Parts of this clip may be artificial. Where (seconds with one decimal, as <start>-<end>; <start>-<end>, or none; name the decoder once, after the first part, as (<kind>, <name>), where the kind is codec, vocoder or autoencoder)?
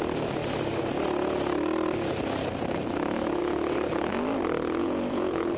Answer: 4.8-5.6 (vocoder, Vocos)